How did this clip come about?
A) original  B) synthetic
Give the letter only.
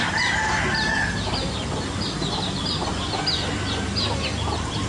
A